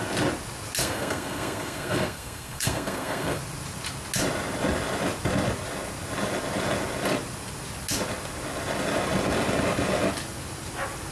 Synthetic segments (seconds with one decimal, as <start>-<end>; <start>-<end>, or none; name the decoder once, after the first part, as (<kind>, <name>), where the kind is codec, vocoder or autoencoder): 0.8-3.4 (codec, SNAC)